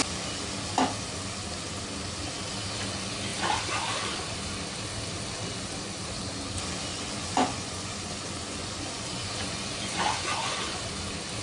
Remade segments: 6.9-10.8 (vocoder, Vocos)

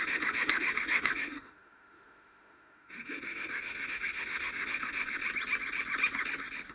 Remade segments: 0.0-5.2 (autoencoder, DAC-VAE)

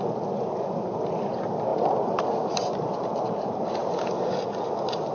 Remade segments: none

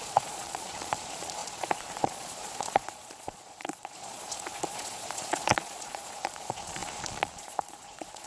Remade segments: 0.0-8.3 (vocoder, Vocos)

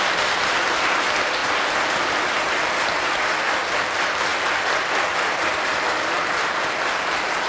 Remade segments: none

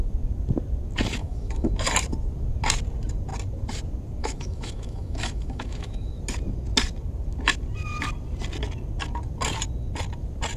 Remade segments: 1.2-1.7 (autoencoder, DAC-VAE); 4.2-6.2